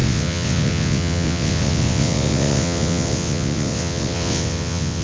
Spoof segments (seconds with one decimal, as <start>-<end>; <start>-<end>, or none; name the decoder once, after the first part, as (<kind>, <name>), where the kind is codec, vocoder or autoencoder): 0.0-5.0 (vocoder, WaveNeXt)